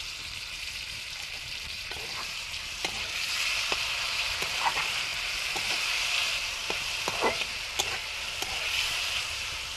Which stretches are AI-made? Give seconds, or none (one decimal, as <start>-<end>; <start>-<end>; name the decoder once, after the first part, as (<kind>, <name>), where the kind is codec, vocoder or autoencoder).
0.0-6.6 (vocoder, BigVGAN v2); 8.9-9.8